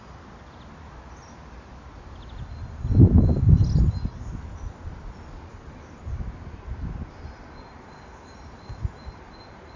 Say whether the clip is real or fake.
real